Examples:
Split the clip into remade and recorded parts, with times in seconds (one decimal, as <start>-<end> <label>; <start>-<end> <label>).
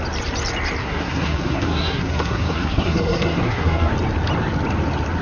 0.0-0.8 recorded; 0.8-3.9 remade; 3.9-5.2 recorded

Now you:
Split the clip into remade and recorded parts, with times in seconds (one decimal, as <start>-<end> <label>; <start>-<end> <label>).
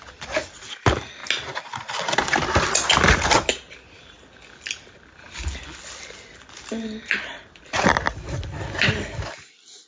0.0-9.9 recorded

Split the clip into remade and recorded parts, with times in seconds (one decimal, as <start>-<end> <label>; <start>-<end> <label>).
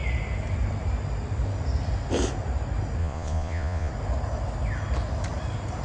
0.0-3.0 recorded; 3.0-3.9 remade; 3.9-5.8 recorded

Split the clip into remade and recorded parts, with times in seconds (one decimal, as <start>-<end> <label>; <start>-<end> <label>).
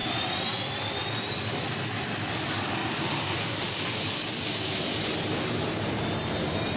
0.0-6.8 recorded